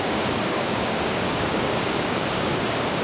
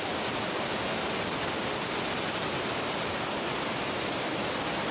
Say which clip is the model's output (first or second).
first